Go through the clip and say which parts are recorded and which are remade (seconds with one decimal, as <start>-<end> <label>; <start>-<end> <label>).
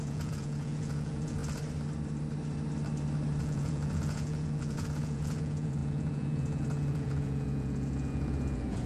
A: 0.0-1.4 remade; 1.4-3.4 recorded; 3.4-8.9 remade